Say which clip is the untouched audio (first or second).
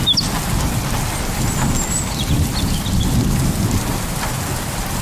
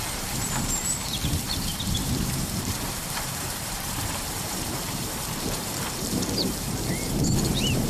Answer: first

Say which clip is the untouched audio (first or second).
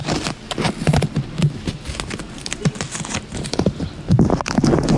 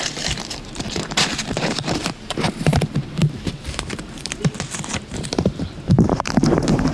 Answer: first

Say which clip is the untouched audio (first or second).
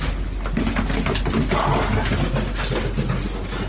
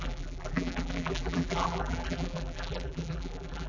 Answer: first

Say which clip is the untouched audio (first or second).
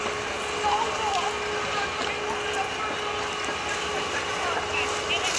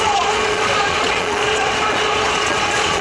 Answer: first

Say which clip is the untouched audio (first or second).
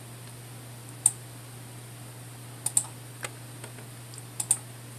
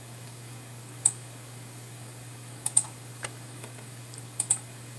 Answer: first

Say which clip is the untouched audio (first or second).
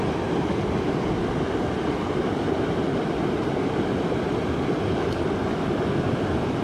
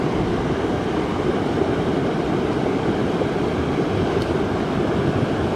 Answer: first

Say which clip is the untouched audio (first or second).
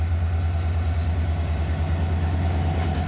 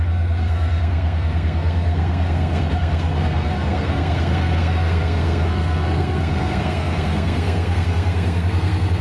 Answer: first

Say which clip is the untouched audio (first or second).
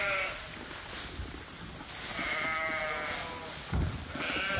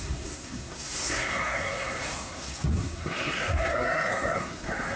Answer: first